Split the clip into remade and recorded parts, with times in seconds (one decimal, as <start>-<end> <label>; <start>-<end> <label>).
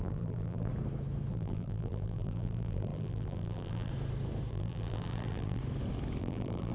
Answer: 0.0-0.7 remade; 0.7-1.3 recorded; 1.3-3.9 remade; 3.9-4.5 recorded; 4.5-5.6 remade; 5.6-6.2 recorded; 6.2-6.7 remade